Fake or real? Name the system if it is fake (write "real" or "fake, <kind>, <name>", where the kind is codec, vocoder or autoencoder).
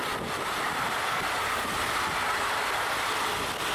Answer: real